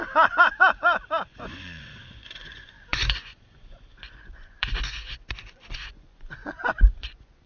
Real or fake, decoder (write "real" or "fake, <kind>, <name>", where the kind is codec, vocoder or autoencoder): fake, vocoder, Vocos